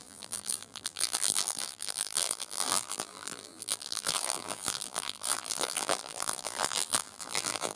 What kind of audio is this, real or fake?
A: fake